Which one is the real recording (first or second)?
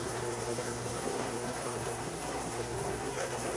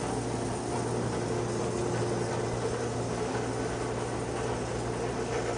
second